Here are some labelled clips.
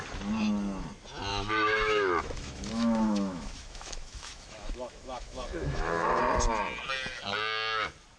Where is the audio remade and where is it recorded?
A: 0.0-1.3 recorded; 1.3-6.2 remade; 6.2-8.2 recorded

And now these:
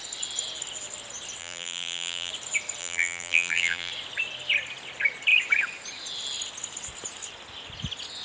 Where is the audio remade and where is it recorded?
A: 0.0-1.4 recorded; 1.4-2.3 remade; 2.3-2.8 recorded; 2.8-3.9 remade; 3.9-8.2 recorded

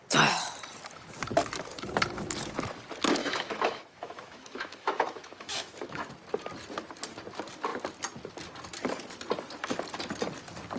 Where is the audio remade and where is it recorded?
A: 0.0-3.2 recorded; 3.2-6.1 remade; 6.1-10.8 recorded

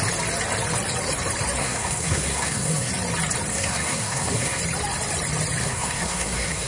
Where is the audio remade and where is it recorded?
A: 0.0-1.6 recorded; 1.6-2.9 remade; 2.9-3.5 recorded; 3.5-4.6 remade; 4.6-5.6 recorded; 5.6-6.7 remade

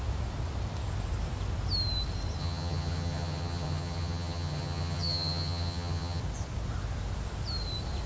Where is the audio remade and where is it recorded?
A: 0.0-2.4 recorded; 2.4-6.2 remade; 6.2-8.1 recorded

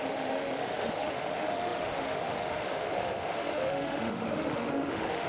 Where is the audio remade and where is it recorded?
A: 0.0-5.3 remade

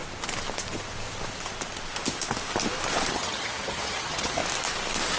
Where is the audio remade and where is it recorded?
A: 0.0-3.1 recorded; 3.1-4.4 remade; 4.4-5.2 recorded

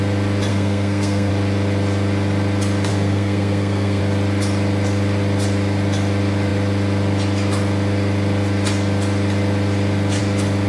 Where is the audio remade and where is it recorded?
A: 0.0-0.5 recorded; 0.5-1.3 remade; 1.3-2.9 recorded; 2.9-4.0 remade; 4.0-10.7 recorded